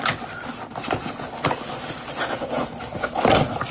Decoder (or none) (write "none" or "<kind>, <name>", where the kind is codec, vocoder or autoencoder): none